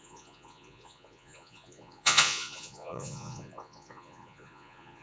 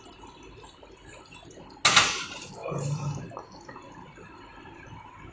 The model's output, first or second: first